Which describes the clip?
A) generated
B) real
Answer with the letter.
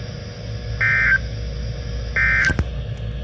B